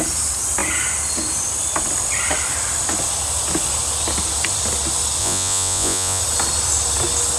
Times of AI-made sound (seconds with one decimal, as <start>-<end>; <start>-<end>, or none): 5.2-6.2